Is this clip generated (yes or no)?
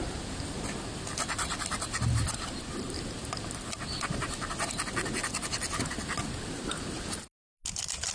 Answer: no